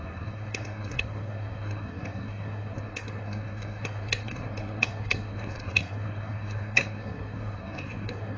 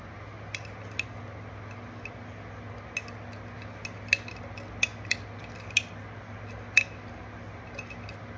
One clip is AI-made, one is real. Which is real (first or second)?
second